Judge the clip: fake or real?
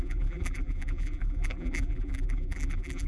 fake